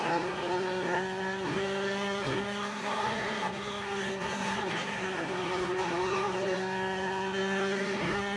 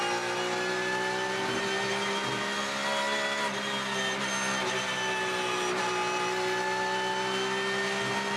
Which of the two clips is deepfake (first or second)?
first